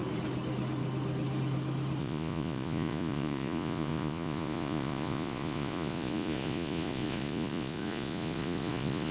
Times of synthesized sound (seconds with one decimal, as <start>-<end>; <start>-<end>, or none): 2.0-9.1